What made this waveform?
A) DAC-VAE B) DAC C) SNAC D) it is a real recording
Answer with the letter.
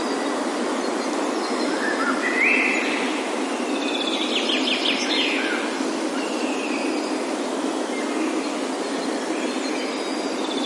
D